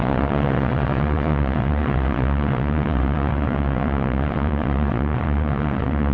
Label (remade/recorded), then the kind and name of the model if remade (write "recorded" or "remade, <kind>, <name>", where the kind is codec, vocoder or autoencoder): remade, vocoder, WaveNeXt